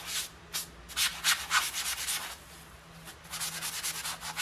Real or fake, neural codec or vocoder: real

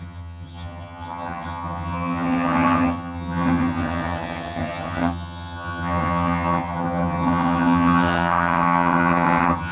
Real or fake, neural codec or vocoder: fake, vocoder, HiFi-GAN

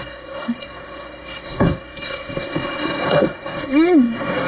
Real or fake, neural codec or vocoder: fake, codec, SNAC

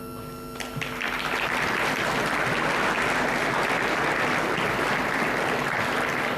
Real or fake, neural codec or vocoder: real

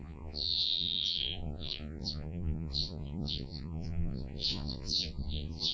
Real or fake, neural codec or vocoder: fake, vocoder, Vocos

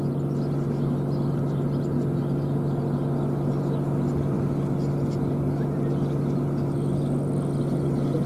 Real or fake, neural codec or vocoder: real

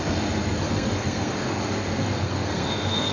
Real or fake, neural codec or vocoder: fake, codec, SNAC